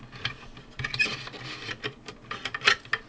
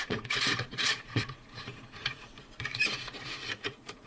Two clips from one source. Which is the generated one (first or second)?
second